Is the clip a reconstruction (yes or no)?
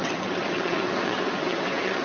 yes